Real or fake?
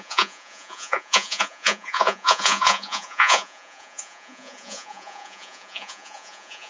fake